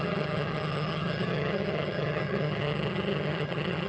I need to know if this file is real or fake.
fake